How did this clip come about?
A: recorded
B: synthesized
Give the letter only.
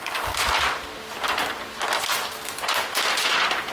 A